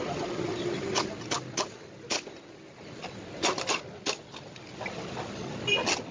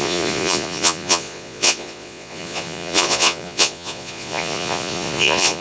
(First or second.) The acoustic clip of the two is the first